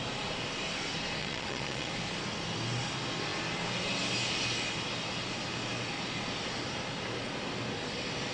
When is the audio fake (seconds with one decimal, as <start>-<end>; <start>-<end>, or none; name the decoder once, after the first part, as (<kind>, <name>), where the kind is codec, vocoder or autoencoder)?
1.2-1.9 (vocoder, Vocos)